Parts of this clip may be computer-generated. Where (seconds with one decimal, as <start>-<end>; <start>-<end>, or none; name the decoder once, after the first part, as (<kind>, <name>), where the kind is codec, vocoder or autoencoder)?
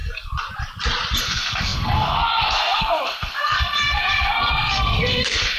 1.2-5.6 (codec, SNAC)